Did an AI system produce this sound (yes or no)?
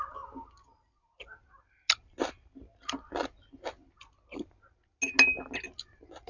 no